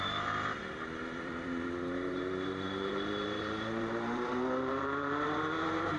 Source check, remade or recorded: remade